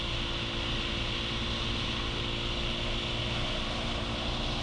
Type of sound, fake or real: real